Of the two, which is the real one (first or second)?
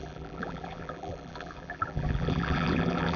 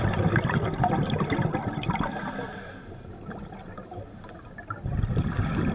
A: second